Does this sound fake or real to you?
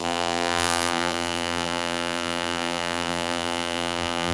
fake